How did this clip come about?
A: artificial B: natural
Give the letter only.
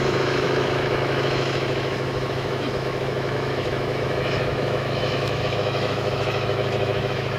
A